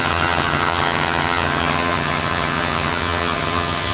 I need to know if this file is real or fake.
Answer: fake